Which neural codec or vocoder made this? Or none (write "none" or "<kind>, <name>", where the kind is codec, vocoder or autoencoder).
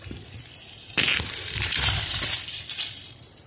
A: vocoder, BigVGAN v2